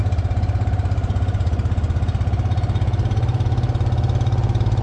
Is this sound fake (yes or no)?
no